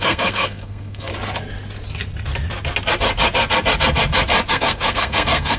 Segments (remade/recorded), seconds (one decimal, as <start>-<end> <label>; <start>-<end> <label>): 0.0-1.1 remade; 1.1-4.5 recorded; 4.5-5.6 remade